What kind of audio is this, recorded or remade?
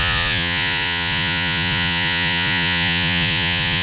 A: remade